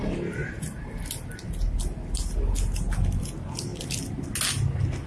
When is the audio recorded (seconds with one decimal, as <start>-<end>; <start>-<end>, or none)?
0.0-5.1

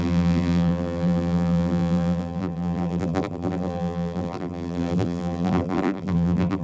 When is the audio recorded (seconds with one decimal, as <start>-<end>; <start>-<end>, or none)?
none